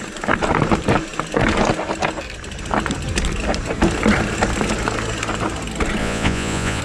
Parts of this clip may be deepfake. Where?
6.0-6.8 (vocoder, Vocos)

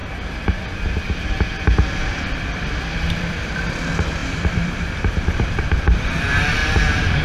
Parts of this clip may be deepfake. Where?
1.6-7.2 (vocoder, BigVGAN v2)

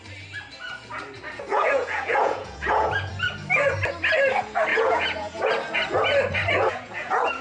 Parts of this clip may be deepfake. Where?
1.5-3.1 (vocoder, Vocos); 4.7-5.5; 6.7-7.4